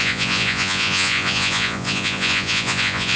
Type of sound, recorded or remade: remade